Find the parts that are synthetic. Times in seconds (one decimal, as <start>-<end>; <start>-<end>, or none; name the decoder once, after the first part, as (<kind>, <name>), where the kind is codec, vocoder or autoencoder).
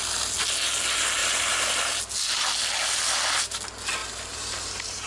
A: 1.2-2.0 (vocoder, BigVGAN v2); 4.0-5.1